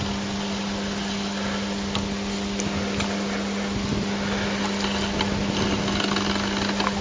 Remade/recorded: recorded